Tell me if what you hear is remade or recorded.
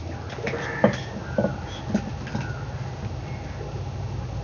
recorded